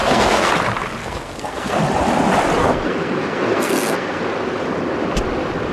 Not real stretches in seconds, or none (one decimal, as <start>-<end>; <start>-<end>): 0.0-0.5; 1.0-1.8; 2.6-4.2